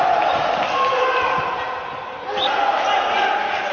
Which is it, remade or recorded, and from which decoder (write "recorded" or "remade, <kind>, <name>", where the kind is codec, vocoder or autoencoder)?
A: recorded